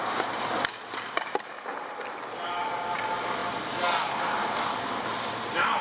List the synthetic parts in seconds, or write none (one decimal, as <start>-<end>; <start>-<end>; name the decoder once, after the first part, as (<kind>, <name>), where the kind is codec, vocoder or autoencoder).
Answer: none